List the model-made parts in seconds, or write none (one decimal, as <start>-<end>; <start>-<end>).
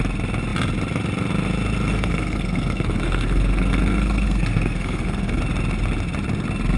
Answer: 1.9-5.4